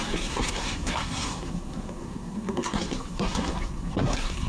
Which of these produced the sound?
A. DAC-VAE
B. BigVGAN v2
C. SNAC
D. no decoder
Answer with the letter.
C